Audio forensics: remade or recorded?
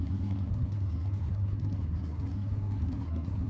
remade